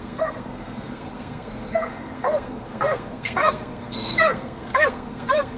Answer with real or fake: fake